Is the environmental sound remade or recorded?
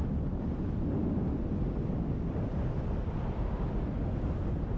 recorded